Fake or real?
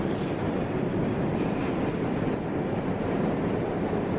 real